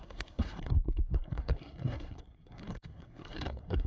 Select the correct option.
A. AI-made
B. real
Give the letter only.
A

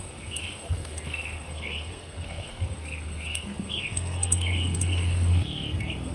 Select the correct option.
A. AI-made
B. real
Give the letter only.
A